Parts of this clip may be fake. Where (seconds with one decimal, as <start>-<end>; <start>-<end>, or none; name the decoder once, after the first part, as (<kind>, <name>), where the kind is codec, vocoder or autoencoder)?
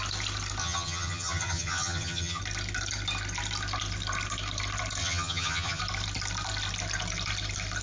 0.6-2.4 (vocoder, HiFi-GAN); 5.0-5.8